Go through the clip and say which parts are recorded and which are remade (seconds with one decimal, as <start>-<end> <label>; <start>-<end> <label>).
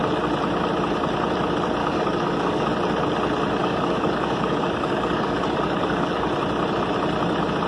0.0-1.8 recorded; 1.8-2.7 remade; 2.7-3.6 recorded; 3.6-6.3 remade; 6.3-7.7 recorded